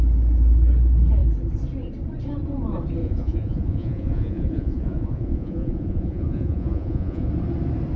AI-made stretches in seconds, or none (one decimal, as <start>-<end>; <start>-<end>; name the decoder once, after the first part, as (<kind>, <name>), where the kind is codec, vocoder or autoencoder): 3.0-7.3 (vocoder, Vocos)